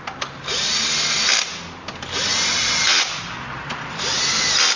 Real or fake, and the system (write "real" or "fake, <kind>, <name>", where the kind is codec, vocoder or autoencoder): real